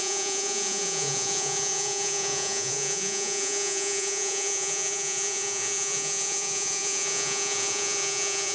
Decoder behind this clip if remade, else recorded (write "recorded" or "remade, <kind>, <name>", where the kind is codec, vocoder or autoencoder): remade, vocoder, Vocos